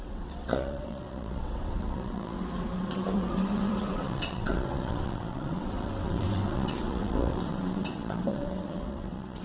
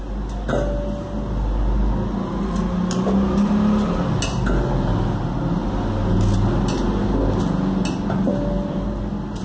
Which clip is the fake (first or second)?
first